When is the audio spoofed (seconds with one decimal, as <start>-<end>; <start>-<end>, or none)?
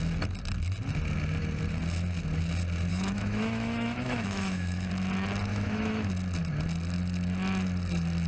2.9-4.9; 5.5-6.1